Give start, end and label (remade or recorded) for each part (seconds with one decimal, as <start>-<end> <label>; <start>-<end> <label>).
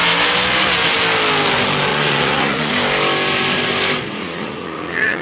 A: 0.0-1.9 recorded; 1.9-2.7 remade; 2.7-4.2 recorded; 4.2-5.2 remade